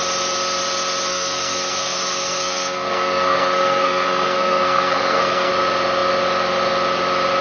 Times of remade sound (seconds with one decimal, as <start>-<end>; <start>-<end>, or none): 1.1-5.5